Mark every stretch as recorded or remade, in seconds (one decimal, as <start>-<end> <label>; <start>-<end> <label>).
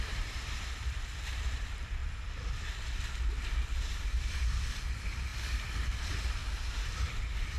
0.0-2.0 remade; 2.0-3.9 recorded; 3.9-6.4 remade; 6.4-7.6 recorded